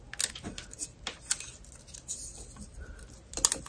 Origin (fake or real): real